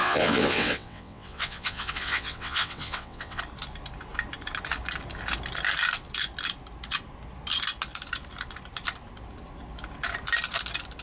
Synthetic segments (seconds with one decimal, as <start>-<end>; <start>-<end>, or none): 0.0-3.4